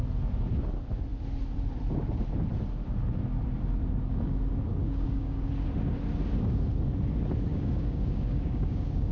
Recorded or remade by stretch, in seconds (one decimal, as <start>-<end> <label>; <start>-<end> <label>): 0.0-4.7 recorded; 4.7-5.5 remade; 5.5-7.5 recorded; 7.5-9.1 remade